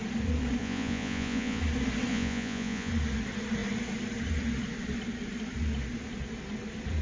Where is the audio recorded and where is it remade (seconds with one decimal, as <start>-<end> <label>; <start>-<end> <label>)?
0.0-0.6 recorded; 0.6-1.6 remade; 1.6-2.1 recorded; 2.1-2.9 remade; 2.9-7.0 recorded